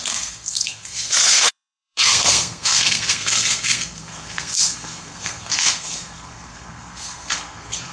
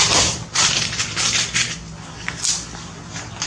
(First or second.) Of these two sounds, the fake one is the first